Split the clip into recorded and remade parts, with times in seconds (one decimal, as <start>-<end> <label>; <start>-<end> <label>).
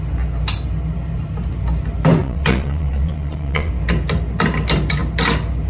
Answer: 0.0-2.2 recorded; 2.2-3.7 remade; 3.7-5.7 recorded